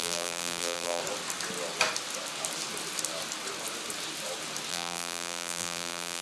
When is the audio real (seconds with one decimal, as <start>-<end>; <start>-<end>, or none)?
1.0-4.7